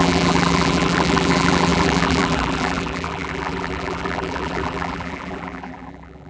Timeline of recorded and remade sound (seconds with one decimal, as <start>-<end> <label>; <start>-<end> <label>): 0.0-6.3 remade